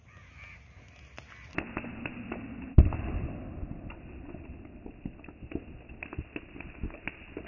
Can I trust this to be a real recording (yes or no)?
yes